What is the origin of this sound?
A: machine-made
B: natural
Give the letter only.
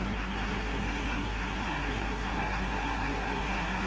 A